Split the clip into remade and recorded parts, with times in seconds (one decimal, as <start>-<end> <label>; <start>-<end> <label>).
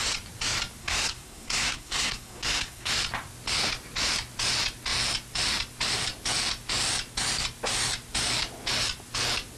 0.0-0.8 recorded; 0.8-2.9 remade; 2.9-9.6 recorded